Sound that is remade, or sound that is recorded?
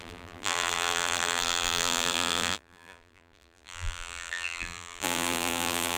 remade